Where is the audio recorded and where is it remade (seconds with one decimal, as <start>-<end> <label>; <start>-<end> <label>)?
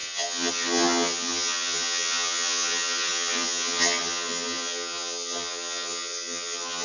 0.0-6.8 remade